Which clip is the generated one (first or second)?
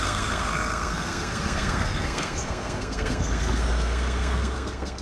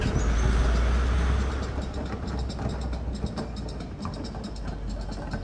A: first